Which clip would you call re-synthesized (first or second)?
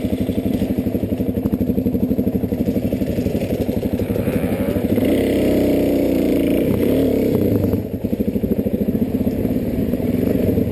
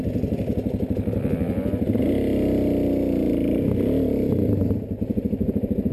first